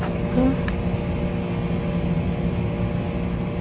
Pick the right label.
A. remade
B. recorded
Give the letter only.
B